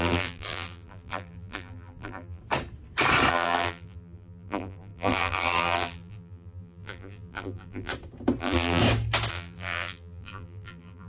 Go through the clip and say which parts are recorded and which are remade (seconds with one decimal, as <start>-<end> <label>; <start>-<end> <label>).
0.0-2.4 remade; 2.4-3.3 recorded; 3.3-7.9 remade; 7.9-8.4 recorded; 8.4-8.8 remade; 8.8-9.3 recorded; 9.3-11.1 remade